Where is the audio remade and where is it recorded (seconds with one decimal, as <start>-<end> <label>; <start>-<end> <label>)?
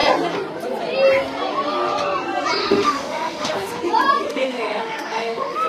0.0-2.6 recorded; 2.6-3.7 remade; 3.7-4.3 recorded; 4.3-5.7 remade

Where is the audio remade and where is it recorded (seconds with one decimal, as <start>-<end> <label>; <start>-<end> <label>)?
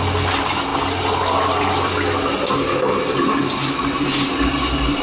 0.0-5.0 recorded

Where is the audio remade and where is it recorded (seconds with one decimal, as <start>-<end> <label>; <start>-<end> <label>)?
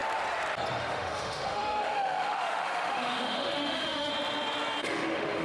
0.0-0.8 recorded; 0.8-4.1 remade; 4.1-4.8 recorded; 4.8-5.4 remade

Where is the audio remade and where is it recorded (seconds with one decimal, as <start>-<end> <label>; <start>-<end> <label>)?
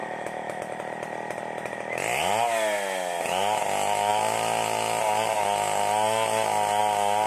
0.0-0.6 remade; 0.6-7.3 recorded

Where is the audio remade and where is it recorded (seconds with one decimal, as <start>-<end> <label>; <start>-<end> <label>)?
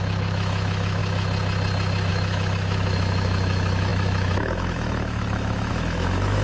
0.0-1.0 remade; 1.0-2.1 recorded; 2.1-6.4 remade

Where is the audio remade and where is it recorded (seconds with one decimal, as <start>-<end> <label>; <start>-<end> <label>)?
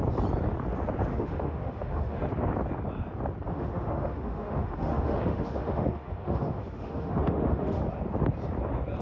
0.0-1.1 recorded; 1.1-2.2 remade; 2.2-3.5 recorded; 3.5-7.8 remade; 7.8-9.0 recorded